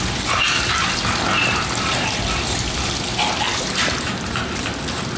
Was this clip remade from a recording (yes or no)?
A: no